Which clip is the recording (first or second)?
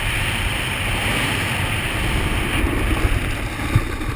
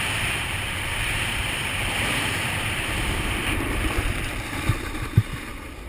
first